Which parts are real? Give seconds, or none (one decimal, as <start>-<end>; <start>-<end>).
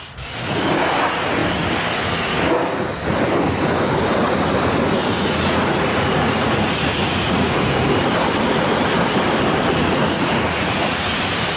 0.0-5.0; 7.6-9.8; 11.1-11.6